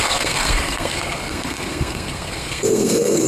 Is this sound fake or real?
fake